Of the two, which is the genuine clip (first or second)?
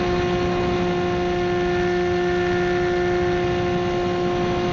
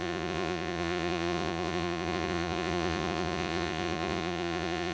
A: first